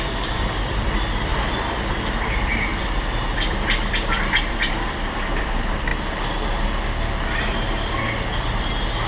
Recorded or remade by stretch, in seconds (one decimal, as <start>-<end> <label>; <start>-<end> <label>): 0.0-1.3 remade; 1.3-1.9 recorded; 1.9-5.9 remade; 5.9-9.1 recorded